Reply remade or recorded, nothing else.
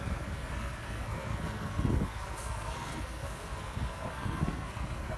remade